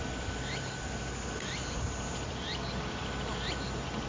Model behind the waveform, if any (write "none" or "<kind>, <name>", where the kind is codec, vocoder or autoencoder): none